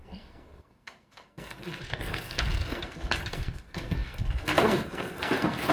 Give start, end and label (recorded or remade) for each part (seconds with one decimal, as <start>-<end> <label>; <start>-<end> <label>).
0.0-5.7 remade